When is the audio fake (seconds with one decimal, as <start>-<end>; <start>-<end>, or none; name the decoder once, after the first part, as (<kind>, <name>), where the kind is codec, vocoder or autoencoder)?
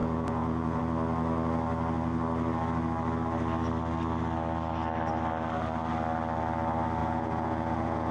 0.0-0.8 (vocoder, Vocos); 7.0-8.1